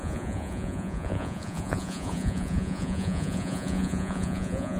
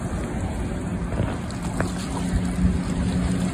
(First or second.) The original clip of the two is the second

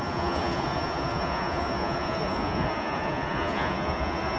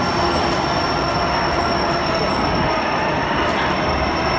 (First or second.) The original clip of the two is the second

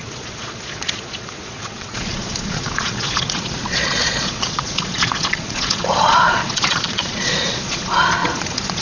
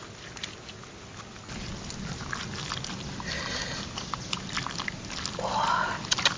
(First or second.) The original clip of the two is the second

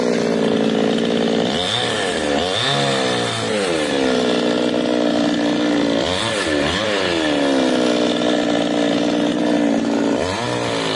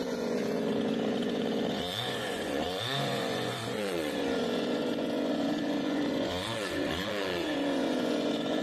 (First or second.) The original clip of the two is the first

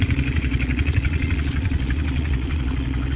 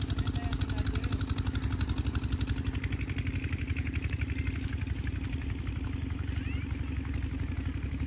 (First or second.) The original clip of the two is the second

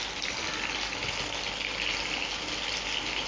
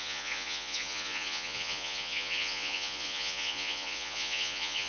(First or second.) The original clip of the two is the first